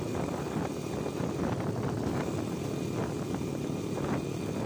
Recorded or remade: recorded